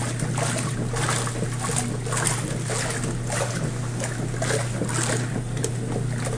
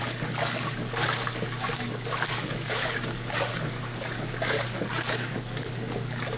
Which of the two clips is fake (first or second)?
second